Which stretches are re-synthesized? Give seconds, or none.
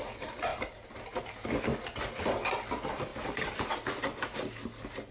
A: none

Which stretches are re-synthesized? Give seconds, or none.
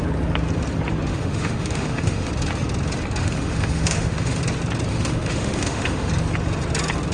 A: 1.1-2.3 (autoencoder, DAC-VAE); 3.2-4.4; 4.9-6.1